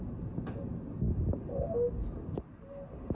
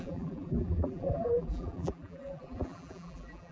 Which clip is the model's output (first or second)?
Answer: second